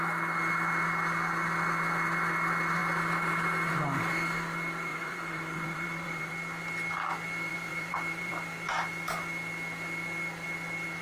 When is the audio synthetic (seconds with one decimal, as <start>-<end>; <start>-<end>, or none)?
4.9-6.3; 7.5-8.3